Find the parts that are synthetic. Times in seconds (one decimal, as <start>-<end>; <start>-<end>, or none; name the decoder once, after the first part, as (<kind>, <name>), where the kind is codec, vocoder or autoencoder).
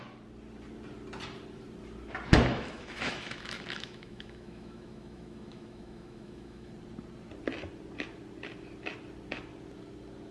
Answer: 2.5-6.7 (autoencoder, DAC-VAE)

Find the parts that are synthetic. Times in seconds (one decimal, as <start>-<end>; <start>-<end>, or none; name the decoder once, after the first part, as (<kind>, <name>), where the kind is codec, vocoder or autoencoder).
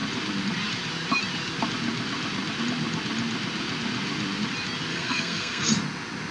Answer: 4.9-5.7 (codec, SNAC)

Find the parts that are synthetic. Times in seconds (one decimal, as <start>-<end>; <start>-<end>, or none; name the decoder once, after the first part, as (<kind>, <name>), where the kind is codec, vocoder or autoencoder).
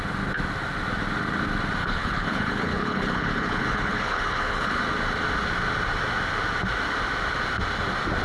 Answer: 1.8-4.8 (codec, HILCodec)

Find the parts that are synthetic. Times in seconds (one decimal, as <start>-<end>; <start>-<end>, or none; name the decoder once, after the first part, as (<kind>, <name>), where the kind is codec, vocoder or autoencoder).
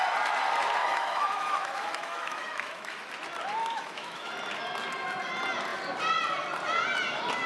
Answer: 0.8-3.1 (autoencoder, DAC-VAE); 3.6-4.3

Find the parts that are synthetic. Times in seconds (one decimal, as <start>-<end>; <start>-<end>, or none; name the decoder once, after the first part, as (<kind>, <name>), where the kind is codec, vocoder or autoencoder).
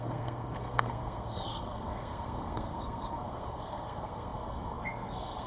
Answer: 0.0-5.5 (codec, SNAC)